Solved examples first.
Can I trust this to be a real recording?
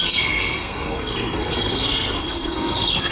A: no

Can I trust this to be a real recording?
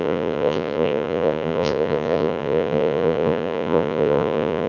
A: no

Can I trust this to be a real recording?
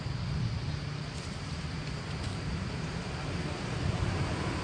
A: yes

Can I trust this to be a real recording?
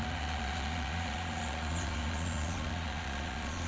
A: no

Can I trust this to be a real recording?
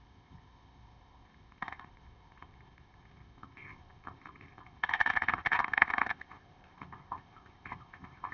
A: no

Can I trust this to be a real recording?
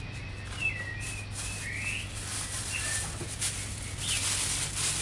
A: yes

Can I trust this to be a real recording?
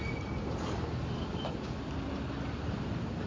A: yes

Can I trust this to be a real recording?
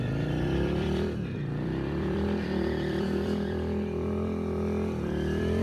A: no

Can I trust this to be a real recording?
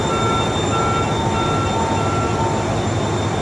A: yes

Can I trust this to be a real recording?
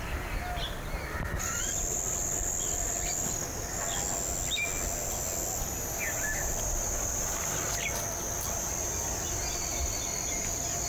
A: yes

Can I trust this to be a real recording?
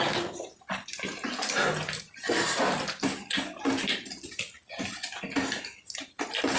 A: yes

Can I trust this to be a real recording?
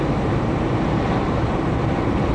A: no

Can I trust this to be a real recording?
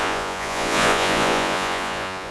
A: no